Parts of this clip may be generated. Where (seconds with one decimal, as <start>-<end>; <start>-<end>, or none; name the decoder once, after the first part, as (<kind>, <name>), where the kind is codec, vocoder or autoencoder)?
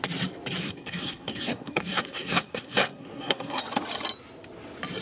0.6-3.6 (codec, SNAC)